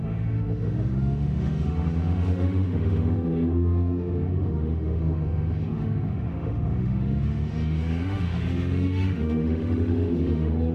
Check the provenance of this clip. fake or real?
fake